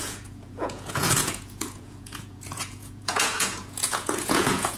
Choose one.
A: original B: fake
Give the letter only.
B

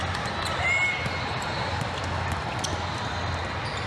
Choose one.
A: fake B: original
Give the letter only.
B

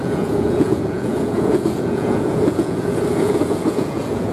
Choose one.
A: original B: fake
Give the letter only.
B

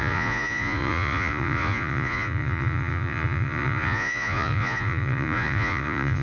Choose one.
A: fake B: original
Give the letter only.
A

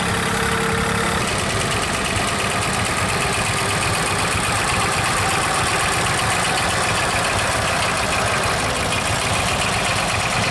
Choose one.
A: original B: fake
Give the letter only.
A